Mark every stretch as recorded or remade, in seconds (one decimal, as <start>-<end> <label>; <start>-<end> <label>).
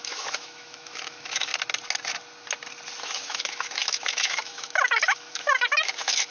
0.0-1.5 remade; 1.5-3.0 recorded; 3.0-6.3 remade